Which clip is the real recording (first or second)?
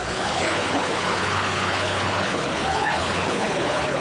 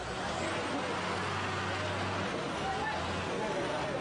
second